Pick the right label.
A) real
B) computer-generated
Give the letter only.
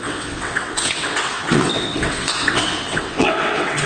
B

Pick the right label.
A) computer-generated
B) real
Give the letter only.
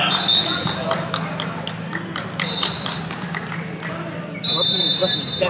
B